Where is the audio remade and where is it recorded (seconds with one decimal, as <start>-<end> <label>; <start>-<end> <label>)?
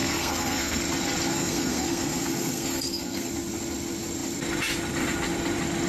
0.0-0.8 remade; 0.8-1.3 recorded; 1.3-3.3 remade; 3.3-5.9 recorded